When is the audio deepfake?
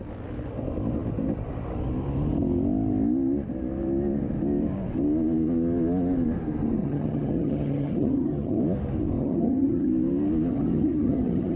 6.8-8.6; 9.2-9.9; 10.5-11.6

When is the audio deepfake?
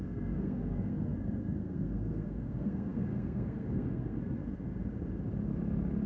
0.0-4.4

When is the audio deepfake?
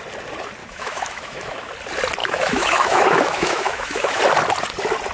0.6-1.7; 2.2-4.2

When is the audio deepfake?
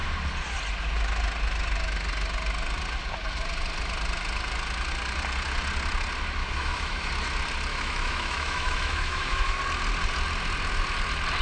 6.4-7.1; 7.7-9.6